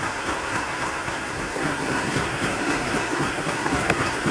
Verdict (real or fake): fake